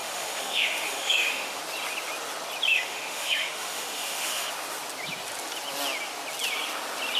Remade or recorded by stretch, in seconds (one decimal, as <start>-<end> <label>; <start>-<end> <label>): 0.0-1.6 remade; 1.6-2.7 recorded; 2.7-4.5 remade; 4.5-7.2 recorded